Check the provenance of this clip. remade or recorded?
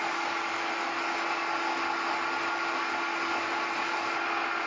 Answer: recorded